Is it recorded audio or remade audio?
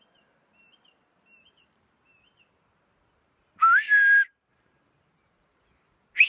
recorded